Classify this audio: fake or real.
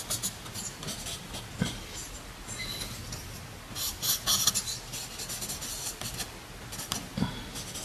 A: real